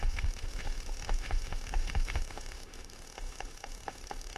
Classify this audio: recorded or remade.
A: remade